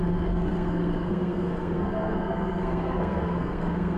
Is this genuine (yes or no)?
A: no